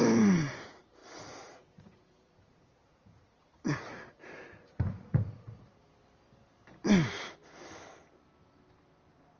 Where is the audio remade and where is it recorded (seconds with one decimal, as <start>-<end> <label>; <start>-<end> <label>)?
0.0-1.0 recorded; 1.0-5.7 remade; 5.7-9.4 recorded